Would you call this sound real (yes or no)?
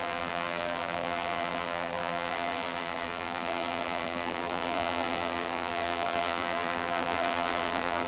no